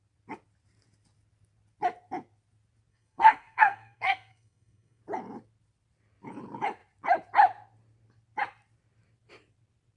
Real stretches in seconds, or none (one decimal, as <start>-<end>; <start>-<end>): 0.0-2.9; 5.0-10.0